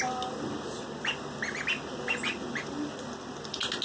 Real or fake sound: real